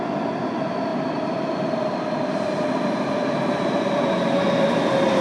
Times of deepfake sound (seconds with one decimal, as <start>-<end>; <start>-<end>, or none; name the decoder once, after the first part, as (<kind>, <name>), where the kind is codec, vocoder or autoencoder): none